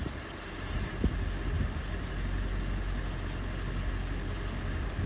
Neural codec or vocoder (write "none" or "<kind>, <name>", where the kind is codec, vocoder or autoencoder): none